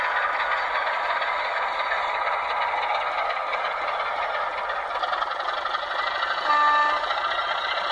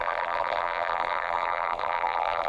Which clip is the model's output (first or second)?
second